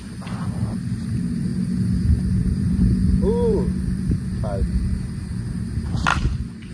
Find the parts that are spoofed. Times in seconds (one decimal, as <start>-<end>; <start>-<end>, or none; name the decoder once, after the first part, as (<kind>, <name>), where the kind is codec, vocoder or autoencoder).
2.4-5.3 (vocoder, BigVGAN v2); 6.1-6.7